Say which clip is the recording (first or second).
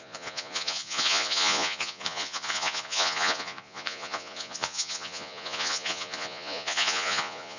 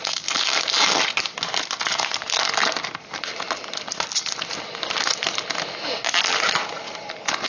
second